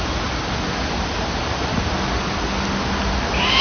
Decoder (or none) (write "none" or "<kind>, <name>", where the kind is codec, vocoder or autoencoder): none